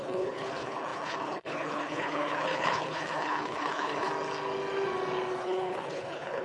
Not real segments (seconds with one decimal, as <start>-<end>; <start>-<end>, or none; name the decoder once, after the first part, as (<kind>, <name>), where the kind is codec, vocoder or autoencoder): 0.0-4.1 (codec, HILCodec); 5.4-6.4